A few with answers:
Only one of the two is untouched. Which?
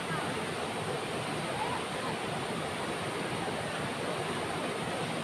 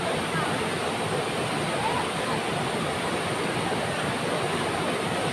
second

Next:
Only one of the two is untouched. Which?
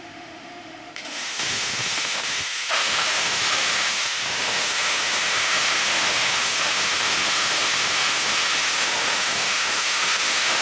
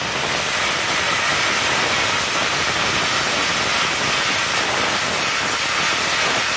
second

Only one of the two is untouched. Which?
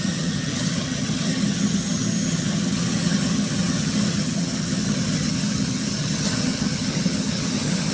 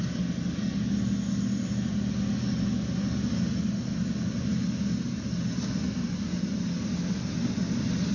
second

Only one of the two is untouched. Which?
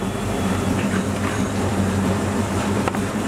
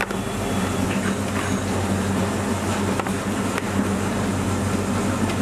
second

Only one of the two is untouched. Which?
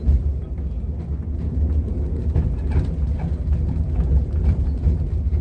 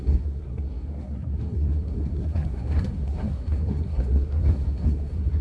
first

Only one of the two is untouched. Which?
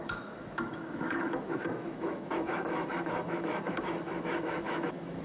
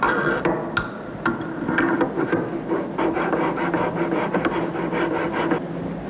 second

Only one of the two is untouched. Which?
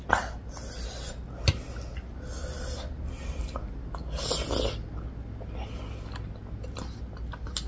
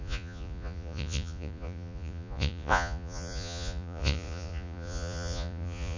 first